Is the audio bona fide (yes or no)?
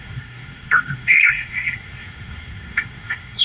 no